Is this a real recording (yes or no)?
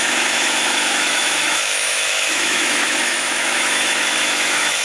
no